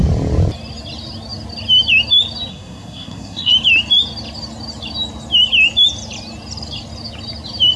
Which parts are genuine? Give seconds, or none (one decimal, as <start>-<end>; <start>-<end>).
0.0-2.5; 3.5-7.8